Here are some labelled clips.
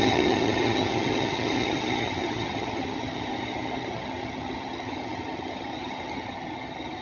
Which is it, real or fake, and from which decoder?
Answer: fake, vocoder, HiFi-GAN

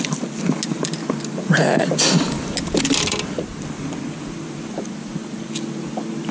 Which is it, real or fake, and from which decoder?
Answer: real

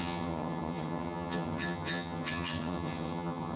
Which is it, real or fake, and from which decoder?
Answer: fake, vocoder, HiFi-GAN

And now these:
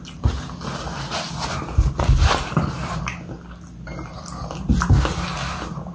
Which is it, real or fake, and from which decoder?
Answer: real